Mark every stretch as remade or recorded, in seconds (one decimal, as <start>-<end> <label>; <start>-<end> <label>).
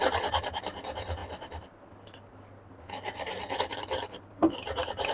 0.0-1.2 remade; 1.2-3.7 recorded; 3.7-5.1 remade